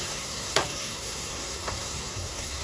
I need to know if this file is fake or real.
fake